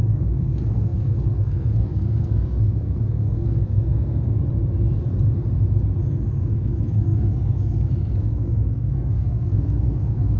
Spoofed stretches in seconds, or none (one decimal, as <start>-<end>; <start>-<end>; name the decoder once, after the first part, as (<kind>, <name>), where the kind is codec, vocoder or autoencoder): 0.0-4.4 (codec, SNAC); 6.1-10.4